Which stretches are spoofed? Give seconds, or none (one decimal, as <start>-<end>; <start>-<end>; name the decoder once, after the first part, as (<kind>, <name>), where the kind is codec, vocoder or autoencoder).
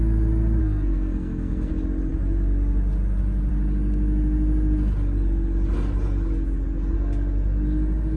0.6-1.7 (codec, SNAC)